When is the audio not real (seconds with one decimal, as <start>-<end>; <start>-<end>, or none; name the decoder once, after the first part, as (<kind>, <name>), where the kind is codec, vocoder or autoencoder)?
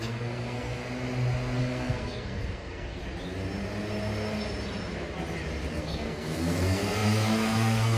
0.0-0.8 (codec, SNAC); 1.6-3.0; 5.7-8.0